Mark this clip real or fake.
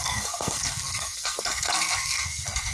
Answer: fake